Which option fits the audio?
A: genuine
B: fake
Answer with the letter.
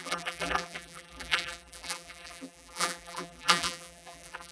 B